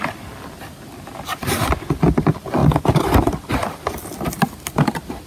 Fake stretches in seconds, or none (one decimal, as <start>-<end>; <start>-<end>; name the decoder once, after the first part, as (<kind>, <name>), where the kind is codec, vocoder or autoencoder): 2.6-3.9 (vocoder, BigVGAN v2)